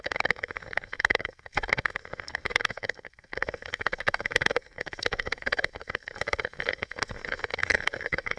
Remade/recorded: remade